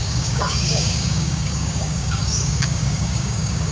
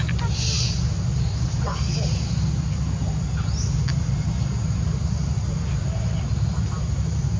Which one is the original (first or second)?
second